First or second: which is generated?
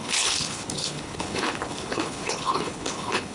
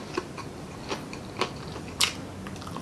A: first